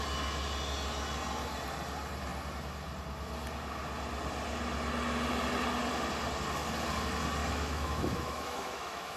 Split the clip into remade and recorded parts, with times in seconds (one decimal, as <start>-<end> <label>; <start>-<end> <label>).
0.0-7.4 recorded; 7.4-9.2 remade